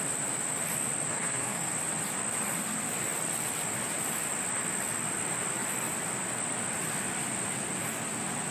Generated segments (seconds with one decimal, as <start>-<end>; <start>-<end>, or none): 1.1-1.7